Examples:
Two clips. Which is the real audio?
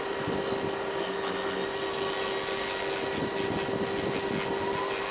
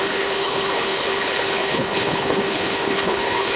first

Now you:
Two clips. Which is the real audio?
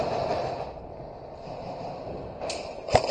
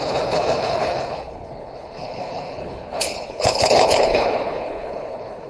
first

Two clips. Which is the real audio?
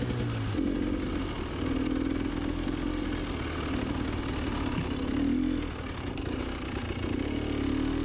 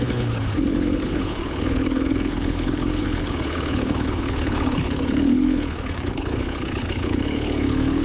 first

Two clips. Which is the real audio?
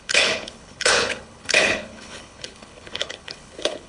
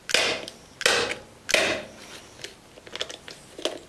second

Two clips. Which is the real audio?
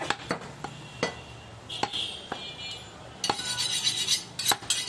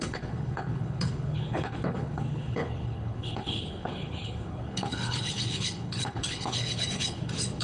first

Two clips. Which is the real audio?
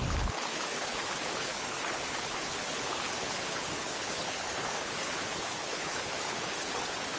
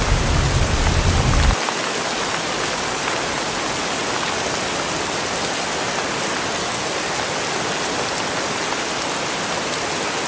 second